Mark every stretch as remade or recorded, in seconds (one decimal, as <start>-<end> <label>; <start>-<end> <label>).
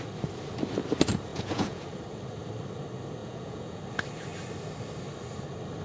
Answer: 0.0-1.3 recorded; 1.3-1.8 remade; 1.8-3.2 recorded; 3.2-3.8 remade; 3.8-5.8 recorded